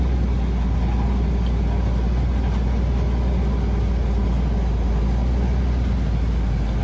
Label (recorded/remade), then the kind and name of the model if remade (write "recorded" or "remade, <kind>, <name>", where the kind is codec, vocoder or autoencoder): recorded